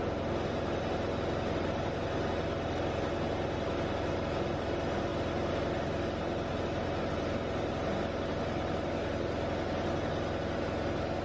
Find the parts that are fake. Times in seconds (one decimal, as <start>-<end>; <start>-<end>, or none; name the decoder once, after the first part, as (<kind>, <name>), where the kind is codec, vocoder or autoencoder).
none